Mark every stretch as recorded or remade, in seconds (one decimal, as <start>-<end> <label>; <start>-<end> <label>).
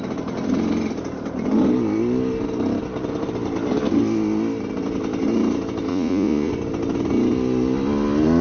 0.0-5.9 recorded; 5.9-6.5 remade; 6.5-8.4 recorded